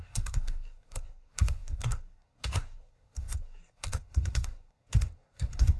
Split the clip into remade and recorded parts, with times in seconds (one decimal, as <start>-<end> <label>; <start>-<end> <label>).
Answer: 0.0-5.8 remade